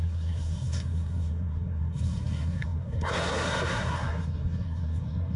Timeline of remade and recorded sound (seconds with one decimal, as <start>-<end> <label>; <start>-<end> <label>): 0.0-5.4 remade